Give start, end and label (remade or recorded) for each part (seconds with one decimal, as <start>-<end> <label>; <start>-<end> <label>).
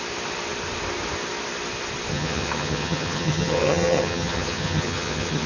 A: 0.0-2.1 recorded; 2.1-5.5 remade